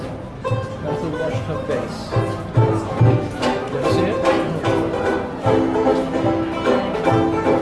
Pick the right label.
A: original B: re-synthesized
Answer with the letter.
A